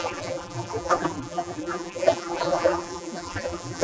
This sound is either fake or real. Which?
fake